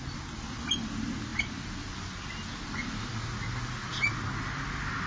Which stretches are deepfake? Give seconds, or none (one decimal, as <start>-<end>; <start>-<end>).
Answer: none